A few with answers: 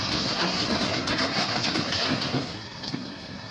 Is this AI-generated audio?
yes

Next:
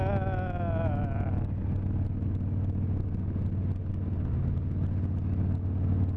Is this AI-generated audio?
no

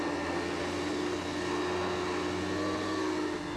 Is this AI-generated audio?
no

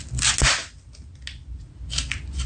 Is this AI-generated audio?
no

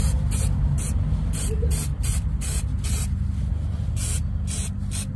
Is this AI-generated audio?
no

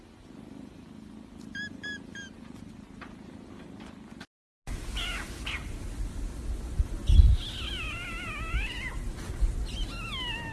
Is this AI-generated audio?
no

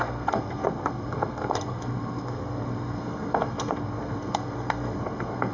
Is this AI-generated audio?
yes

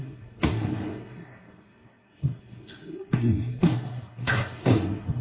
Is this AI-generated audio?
yes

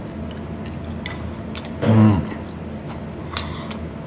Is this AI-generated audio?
no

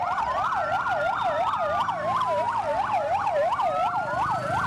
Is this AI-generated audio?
no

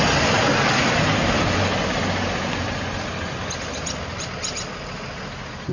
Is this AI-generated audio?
no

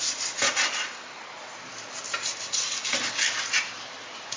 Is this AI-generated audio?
no